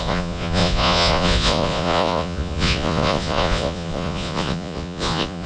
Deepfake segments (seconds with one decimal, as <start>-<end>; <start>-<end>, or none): 0.0-5.5

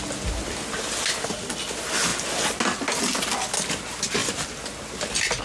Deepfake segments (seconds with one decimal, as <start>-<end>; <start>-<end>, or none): none

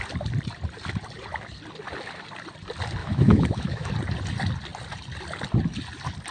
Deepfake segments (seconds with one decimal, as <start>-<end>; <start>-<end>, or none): 3.0-3.9

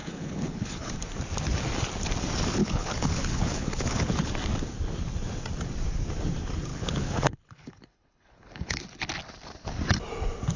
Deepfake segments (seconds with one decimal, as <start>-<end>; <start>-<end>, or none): 0.0-0.9; 2.6-4.3; 6.7-8.8

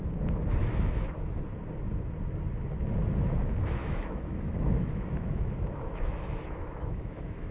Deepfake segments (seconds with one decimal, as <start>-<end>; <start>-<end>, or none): 0.6-1.2; 3.8-7.5

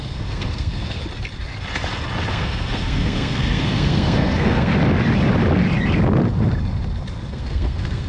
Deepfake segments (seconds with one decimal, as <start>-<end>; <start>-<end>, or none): 0.0-1.0; 2.3-4.7; 7.3-8.1

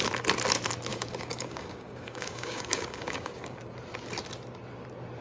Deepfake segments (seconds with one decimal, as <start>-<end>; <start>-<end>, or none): 0.9-3.6

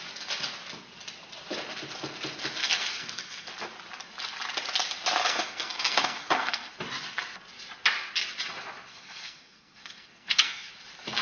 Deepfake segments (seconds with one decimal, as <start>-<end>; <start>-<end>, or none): 2.6-3.5; 5.2-6.7; 8.9-10.7